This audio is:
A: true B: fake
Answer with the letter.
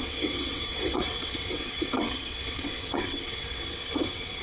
B